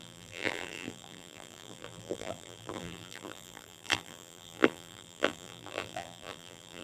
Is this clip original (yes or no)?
no